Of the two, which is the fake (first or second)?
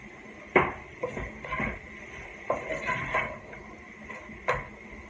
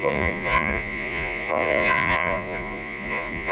second